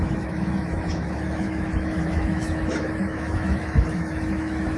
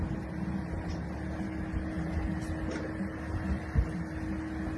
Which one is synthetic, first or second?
first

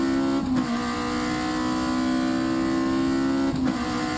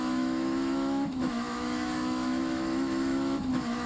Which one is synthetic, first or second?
second